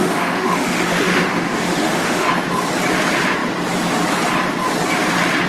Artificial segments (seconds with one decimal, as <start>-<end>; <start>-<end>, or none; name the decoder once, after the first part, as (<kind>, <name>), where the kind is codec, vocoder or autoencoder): 0.0-2.3 (autoencoder, DAC-VAE)